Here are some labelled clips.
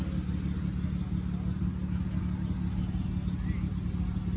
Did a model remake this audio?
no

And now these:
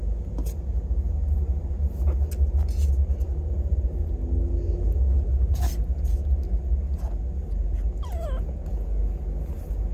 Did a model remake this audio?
no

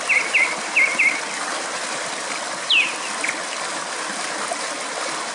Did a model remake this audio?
no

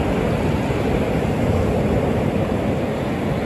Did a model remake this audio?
no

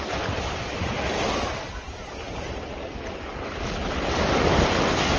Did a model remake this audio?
no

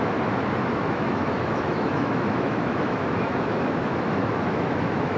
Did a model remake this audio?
yes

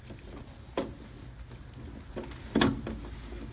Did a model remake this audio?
no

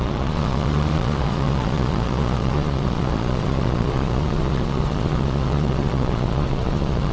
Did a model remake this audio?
yes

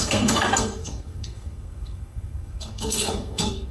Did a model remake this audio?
yes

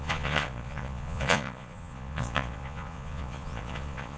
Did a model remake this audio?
yes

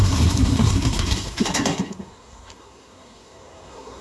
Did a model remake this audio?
yes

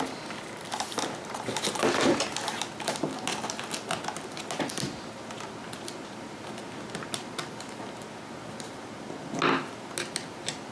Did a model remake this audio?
no